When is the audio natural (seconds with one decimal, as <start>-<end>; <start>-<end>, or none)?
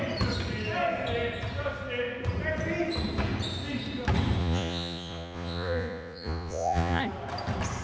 0.0-4.4; 7.0-7.8